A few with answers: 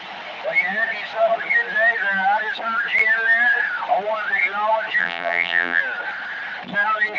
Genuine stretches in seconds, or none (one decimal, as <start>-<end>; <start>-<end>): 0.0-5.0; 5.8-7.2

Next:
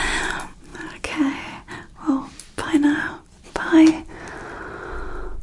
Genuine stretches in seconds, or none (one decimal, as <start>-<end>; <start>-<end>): 0.0-5.4

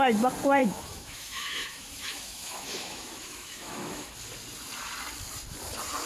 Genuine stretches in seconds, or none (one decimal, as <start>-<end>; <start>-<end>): 0.0-0.6; 4.1-6.1